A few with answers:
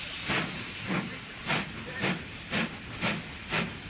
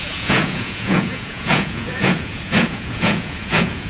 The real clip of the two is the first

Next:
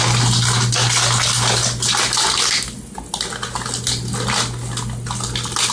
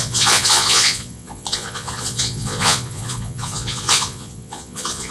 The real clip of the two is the first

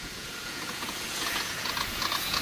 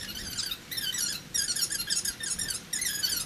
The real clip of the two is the second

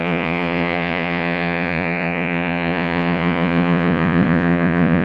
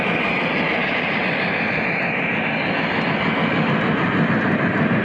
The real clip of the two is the second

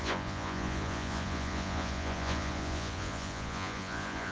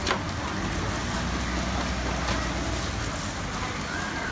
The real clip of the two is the second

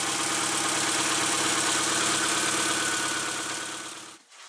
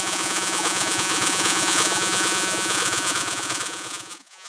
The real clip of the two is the first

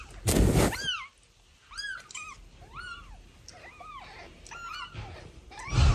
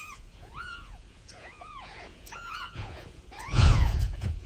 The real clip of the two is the first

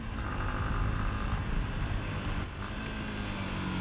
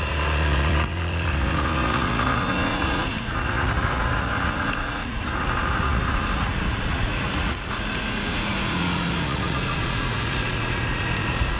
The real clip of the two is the first